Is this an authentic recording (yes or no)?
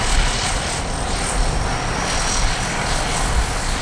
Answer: yes